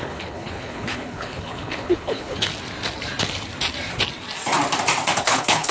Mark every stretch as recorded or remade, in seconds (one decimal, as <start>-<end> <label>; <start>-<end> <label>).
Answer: 0.0-2.5 remade; 2.5-5.2 recorded; 5.2-5.7 remade